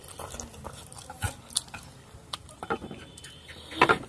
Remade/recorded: recorded